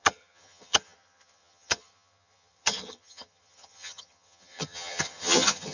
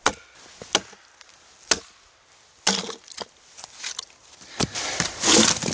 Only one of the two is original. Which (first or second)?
second